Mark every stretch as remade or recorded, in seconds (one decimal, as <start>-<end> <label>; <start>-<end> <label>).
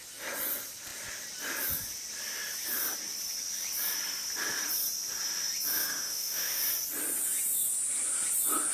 0.0-5.7 recorded; 5.7-6.6 remade; 6.6-8.7 recorded